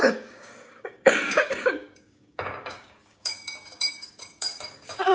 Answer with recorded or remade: remade